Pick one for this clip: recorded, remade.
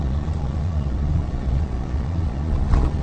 remade